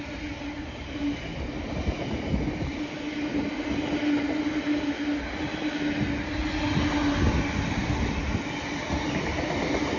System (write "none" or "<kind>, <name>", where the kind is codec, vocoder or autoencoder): none